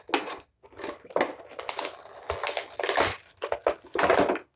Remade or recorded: recorded